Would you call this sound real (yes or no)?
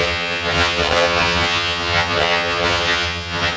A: no